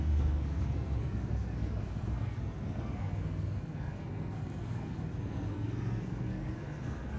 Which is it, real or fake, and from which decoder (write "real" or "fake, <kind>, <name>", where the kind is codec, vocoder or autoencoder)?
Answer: fake, codec, SNAC